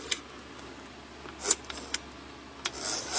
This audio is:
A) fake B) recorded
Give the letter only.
B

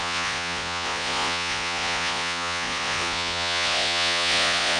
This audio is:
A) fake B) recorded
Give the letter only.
A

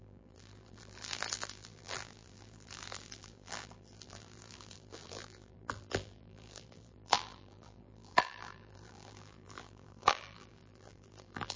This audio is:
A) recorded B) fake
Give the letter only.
B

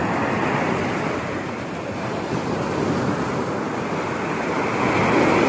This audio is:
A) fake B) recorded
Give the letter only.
B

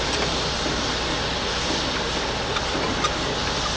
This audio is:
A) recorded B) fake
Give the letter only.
A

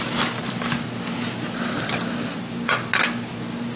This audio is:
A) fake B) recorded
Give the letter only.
B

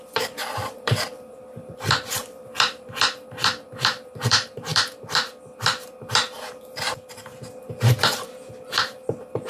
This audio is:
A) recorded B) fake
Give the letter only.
B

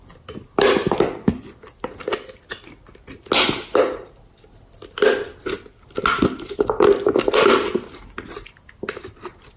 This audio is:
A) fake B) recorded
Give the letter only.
B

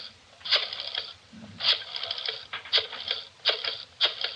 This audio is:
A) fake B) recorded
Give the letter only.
A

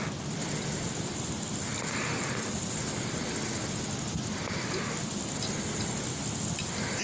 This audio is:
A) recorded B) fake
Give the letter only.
A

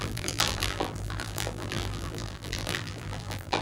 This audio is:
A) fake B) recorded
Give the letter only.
A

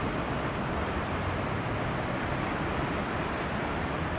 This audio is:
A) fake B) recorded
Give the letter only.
A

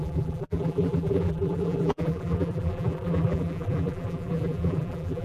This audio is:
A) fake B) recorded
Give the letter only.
A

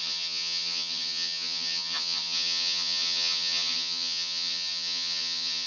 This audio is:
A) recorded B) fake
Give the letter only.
B